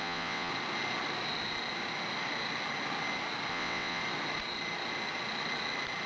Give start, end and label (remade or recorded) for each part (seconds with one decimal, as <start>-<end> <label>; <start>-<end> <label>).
0.0-0.5 remade; 0.5-3.5 recorded; 3.5-4.0 remade; 4.0-6.1 recorded